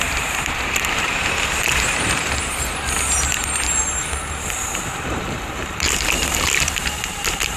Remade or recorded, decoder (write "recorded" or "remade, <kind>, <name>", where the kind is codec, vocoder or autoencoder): remade, vocoder, BigVGAN v2